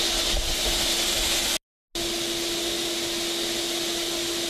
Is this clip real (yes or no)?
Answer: yes